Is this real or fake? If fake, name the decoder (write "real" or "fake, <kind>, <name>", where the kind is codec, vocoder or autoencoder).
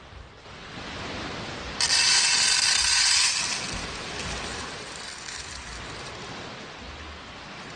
real